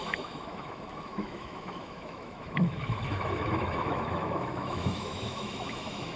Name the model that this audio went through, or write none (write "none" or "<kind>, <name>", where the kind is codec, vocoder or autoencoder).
autoencoder, DAC-VAE